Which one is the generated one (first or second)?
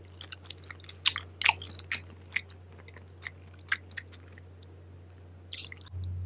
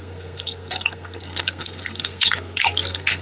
second